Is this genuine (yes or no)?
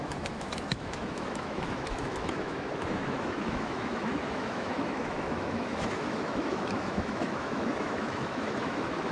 no